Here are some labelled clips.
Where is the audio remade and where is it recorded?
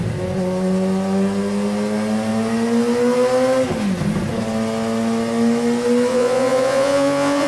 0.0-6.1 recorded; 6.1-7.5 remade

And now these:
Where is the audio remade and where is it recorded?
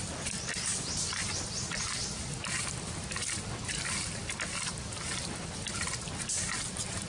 0.0-7.1 recorded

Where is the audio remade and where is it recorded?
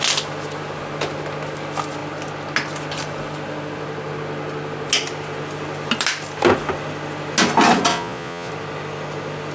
0.0-7.9 recorded; 7.9-8.5 remade; 8.5-9.5 recorded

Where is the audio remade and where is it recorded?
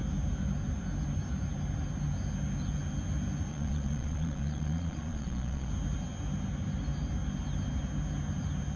0.0-3.5 recorded; 3.5-5.7 remade; 5.7-8.8 recorded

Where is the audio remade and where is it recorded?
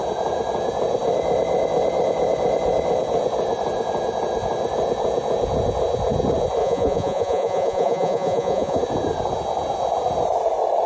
0.0-6.6 recorded; 6.6-8.8 remade; 8.8-10.9 recorded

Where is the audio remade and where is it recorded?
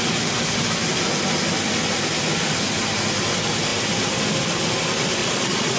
0.0-5.2 recorded; 5.2-5.8 remade